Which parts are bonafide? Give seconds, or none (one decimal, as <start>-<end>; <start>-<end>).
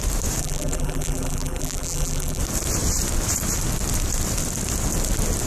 0.0-0.4; 2.4-5.5